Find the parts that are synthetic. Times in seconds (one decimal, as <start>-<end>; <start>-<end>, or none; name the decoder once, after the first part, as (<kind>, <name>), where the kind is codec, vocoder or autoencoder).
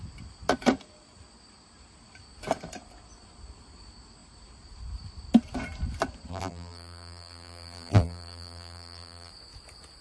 6.3-9.3 (vocoder, BigVGAN v2)